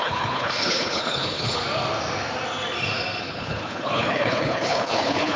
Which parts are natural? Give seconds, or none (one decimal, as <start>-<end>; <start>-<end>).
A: 1.6-3.2